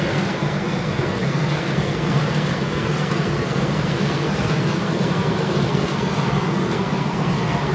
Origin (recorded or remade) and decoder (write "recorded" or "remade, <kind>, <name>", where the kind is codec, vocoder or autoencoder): remade, codec, SNAC